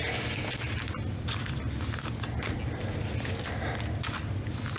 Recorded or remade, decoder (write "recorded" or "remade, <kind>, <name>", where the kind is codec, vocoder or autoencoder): recorded